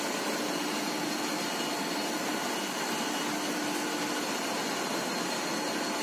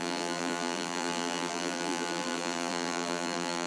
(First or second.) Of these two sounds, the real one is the first